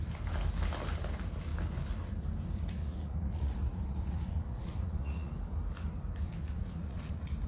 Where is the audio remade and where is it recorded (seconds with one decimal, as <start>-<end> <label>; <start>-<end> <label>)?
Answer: 0.0-2.8 recorded; 2.8-5.3 remade; 5.3-6.4 recorded; 6.4-7.1 remade; 7.1-7.5 recorded